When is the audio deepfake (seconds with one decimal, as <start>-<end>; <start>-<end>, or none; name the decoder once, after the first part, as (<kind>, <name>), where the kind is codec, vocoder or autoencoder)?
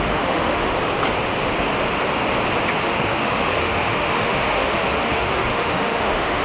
0.0-0.6 (autoencoder, DAC-VAE); 2.8-6.4